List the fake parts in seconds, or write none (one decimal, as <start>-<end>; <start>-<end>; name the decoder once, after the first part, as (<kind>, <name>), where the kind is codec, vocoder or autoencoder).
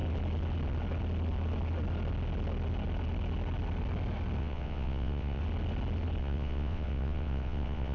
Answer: 4.4-5.4 (vocoder, WaveNeXt); 6.2-7.9